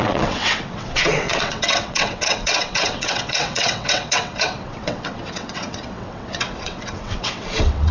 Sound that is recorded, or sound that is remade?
remade